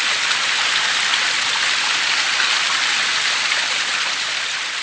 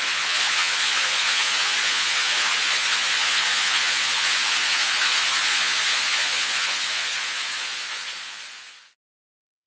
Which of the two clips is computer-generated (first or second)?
second